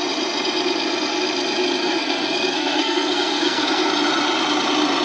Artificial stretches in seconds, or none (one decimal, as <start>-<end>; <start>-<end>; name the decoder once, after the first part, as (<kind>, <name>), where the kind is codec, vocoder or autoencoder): 1.8-3.9 (codec, SNAC)